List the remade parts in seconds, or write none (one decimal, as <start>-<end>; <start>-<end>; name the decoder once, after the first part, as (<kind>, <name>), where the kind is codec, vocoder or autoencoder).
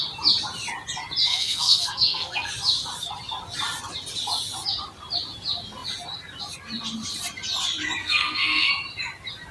1.2-2.5 (codec, SNAC); 8.0-8.7